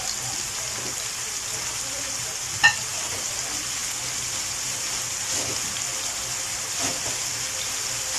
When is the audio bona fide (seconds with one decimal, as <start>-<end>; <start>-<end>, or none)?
0.0-8.2